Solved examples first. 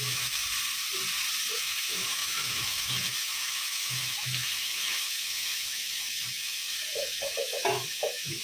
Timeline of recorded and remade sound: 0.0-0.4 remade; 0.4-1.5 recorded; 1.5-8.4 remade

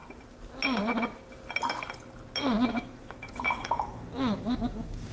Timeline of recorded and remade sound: 0.0-2.7 recorded; 2.7-5.1 remade

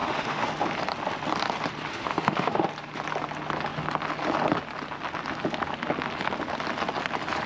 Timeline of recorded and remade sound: 0.0-0.5 remade; 0.5-1.9 recorded; 1.9-2.7 remade; 2.7-7.5 recorded

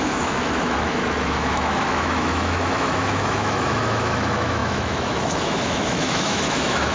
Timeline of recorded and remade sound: 0.0-6.9 remade

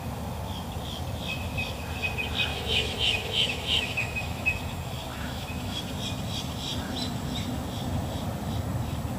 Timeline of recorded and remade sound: 0.0-2.5 recorded; 2.5-4.5 remade; 4.5-5.1 recorded; 5.1-5.8 remade; 5.8-9.2 recorded

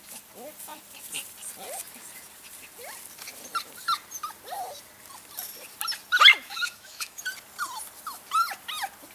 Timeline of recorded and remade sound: 0.0-6.3 recorded; 6.3-7.2 remade; 7.2-9.1 recorded

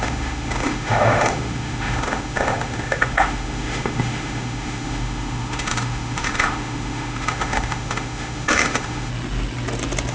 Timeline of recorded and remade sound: 0.0-9.1 remade; 9.1-10.1 recorded